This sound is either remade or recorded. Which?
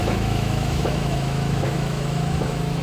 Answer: remade